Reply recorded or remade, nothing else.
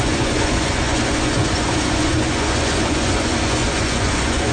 remade